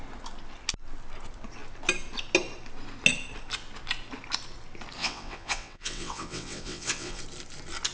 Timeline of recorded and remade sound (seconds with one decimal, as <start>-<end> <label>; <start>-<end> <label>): 0.0-5.0 recorded; 5.0-7.2 remade; 7.2-7.9 recorded